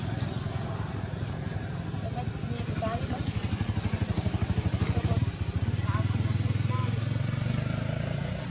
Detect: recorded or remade recorded